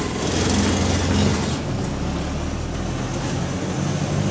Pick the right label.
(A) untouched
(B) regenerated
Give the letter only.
A